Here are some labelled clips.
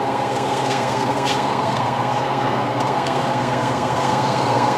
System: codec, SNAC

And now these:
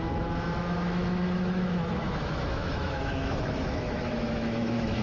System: autoencoder, DAC-VAE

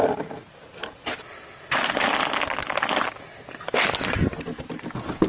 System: none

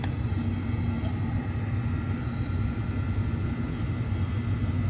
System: none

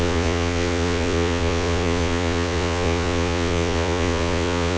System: vocoder, Vocos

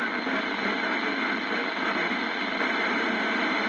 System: none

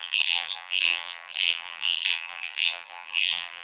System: vocoder, BigVGAN v2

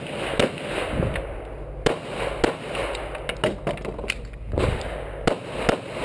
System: none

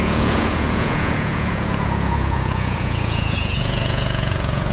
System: vocoder, Vocos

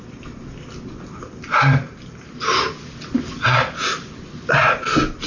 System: none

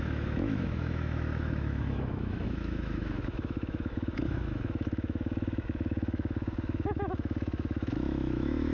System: autoencoder, DAC-VAE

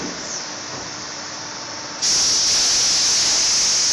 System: none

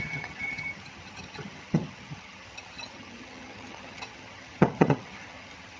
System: vocoder, HiFi-GAN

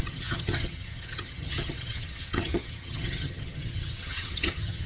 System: vocoder, HiFi-GAN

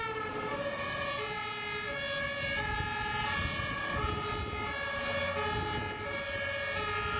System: none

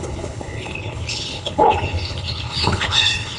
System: codec, HILCodec